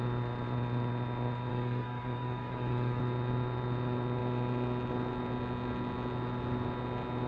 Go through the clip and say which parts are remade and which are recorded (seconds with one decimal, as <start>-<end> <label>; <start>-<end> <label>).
0.0-1.5 recorded; 1.5-3.0 remade; 3.0-7.3 recorded